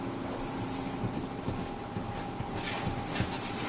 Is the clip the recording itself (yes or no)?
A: no